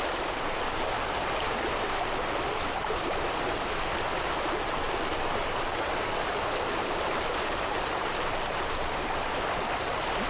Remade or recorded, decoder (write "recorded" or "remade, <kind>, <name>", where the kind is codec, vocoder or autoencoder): recorded